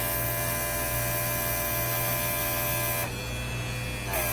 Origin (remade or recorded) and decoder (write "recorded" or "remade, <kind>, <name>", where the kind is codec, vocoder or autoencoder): recorded